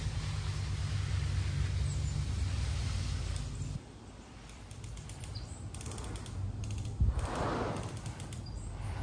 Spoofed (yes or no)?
no